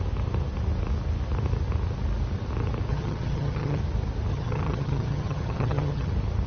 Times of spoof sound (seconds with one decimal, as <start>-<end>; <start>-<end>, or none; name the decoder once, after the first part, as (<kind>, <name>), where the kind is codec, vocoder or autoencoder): 2.9-3.8 (vocoder, HiFi-GAN); 4.3-6.1